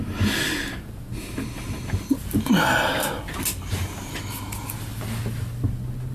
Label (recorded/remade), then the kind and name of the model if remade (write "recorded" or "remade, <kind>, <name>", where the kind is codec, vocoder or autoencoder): recorded